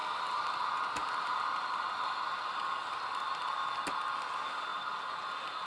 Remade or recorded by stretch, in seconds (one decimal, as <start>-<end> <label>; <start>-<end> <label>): 0.0-1.0 recorded; 1.0-1.9 remade; 1.9-4.7 recorded; 4.7-5.2 remade; 5.2-5.7 recorded